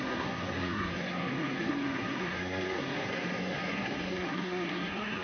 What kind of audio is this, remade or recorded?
remade